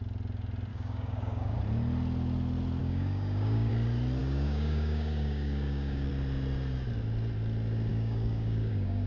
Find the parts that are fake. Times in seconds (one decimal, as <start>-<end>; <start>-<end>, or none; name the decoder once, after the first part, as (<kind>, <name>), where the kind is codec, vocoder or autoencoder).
0.7-1.6 (codec, DAC); 2.8-3.7; 4.2-6.1; 7.9-9.1